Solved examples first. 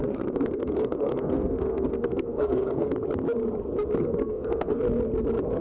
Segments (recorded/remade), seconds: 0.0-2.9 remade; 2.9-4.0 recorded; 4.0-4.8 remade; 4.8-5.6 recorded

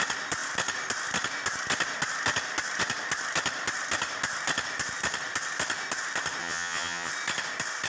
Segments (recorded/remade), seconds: 0.0-6.4 recorded; 6.4-7.1 remade; 7.1-7.9 recorded